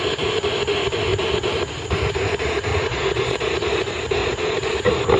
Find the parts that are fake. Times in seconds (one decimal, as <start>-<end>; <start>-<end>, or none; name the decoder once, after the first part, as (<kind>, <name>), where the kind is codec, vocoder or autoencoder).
2.7-3.5 (vocoder, Vocos); 4.2-4.7